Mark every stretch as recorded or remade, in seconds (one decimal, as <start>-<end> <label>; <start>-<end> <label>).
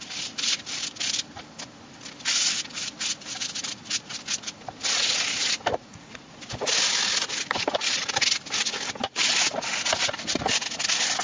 0.0-5.7 recorded; 5.7-6.3 remade; 6.3-11.2 recorded